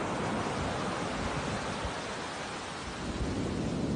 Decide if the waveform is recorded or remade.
recorded